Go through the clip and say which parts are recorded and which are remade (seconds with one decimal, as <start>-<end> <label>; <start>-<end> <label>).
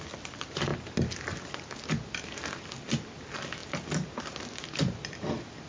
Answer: 0.0-5.7 recorded